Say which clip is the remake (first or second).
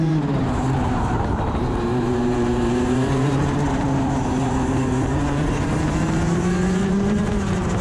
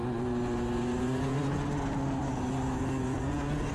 first